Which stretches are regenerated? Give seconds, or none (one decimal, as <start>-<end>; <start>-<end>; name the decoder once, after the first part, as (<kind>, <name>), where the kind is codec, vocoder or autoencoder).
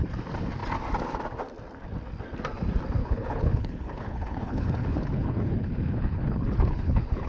3.0-7.3 (codec, HILCodec)